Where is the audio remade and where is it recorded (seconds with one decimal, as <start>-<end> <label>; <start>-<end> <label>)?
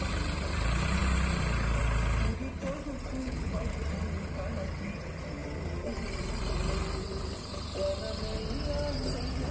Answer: 0.0-3.2 recorded; 3.2-3.7 remade; 3.7-9.5 recorded